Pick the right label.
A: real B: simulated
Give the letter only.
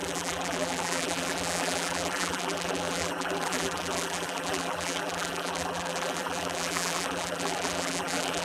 B